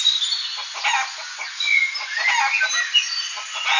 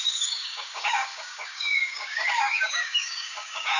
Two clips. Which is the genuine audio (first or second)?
first